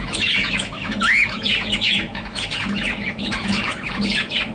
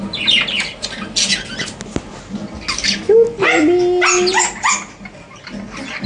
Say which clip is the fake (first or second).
first